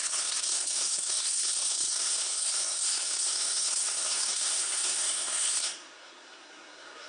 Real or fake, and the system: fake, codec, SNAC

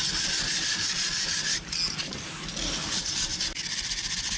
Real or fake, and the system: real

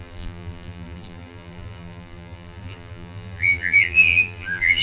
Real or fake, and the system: fake, vocoder, BigVGAN v2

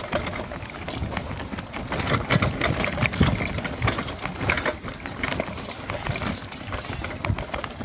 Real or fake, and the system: real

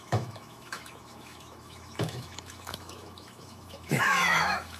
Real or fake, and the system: fake, autoencoder, DAC-VAE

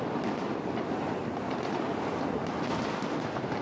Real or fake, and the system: real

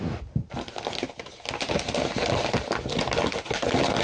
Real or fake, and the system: real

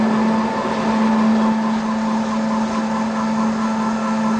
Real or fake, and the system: real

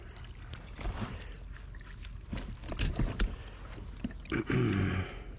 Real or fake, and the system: real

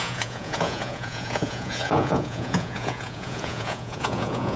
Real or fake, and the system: fake, vocoder, Vocos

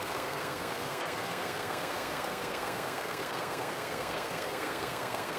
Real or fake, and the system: fake, codec, SNAC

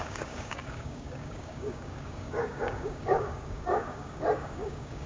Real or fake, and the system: fake, codec, DAC